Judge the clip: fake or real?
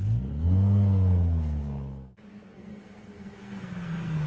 fake